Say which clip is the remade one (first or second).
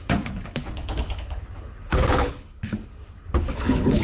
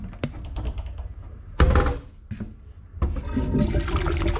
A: first